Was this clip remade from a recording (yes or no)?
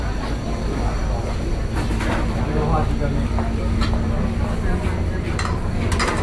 no